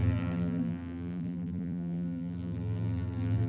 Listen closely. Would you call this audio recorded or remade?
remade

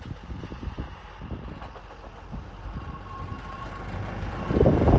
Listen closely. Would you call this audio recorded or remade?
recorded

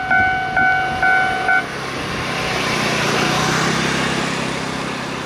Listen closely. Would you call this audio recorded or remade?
recorded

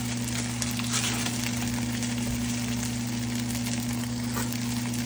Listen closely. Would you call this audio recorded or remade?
recorded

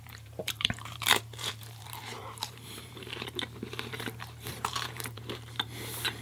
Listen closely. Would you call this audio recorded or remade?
remade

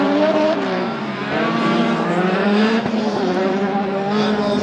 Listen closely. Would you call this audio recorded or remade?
remade